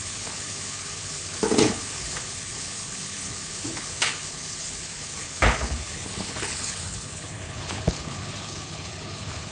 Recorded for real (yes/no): no